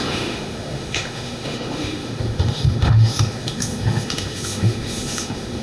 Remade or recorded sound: remade